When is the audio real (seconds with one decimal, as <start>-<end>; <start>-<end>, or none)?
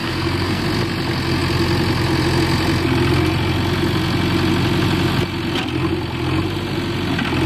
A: 0.6-7.5